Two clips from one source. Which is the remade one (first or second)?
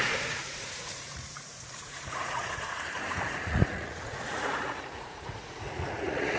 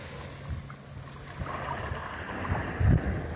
first